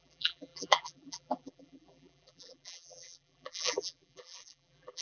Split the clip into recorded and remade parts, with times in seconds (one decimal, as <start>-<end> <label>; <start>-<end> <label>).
0.0-5.0 remade